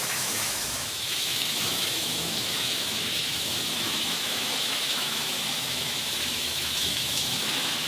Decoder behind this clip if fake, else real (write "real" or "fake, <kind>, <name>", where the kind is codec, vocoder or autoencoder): fake, autoencoder, DAC-VAE